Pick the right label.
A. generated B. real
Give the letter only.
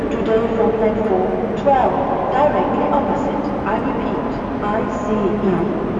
B